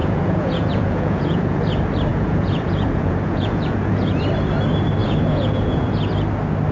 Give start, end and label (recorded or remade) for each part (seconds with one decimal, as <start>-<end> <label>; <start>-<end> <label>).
0.0-1.7 remade; 1.7-2.1 recorded; 2.1-4.2 remade; 4.2-5.0 recorded; 5.0-6.0 remade; 6.0-6.7 recorded